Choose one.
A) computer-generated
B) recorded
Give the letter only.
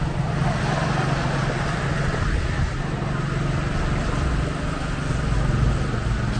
B